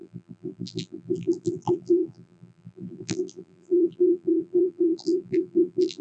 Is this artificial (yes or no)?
yes